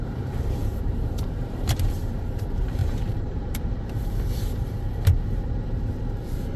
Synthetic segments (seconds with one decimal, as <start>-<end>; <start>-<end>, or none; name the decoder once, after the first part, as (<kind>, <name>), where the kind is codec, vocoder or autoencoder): 0.0-6.6 (vocoder, BigVGAN v2)